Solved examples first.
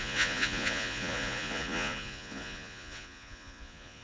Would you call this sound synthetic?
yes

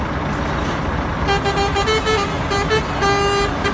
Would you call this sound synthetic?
no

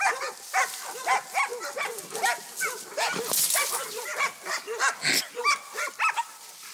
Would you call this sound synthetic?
no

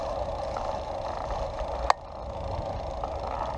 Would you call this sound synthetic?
no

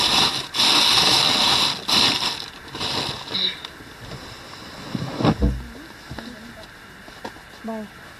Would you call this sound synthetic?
no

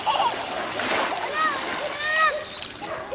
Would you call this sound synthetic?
no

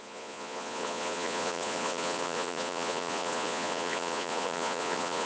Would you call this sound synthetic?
yes